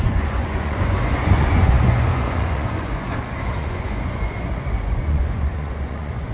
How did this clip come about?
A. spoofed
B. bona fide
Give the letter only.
A